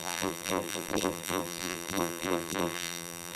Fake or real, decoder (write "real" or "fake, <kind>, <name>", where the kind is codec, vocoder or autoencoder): fake, vocoder, BigVGAN v2